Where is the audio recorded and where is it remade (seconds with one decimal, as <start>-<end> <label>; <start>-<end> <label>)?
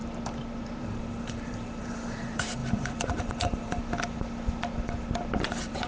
0.0-0.8 recorded; 0.8-3.8 remade; 3.8-5.4 recorded; 5.4-5.9 remade